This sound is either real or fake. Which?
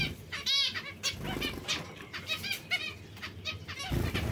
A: real